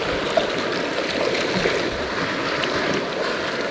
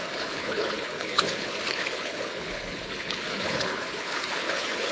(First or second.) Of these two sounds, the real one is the first